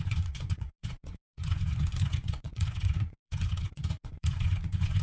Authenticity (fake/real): fake